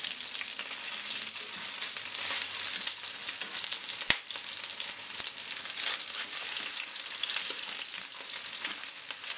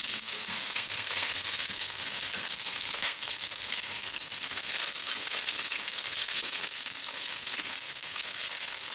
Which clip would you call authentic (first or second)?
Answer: first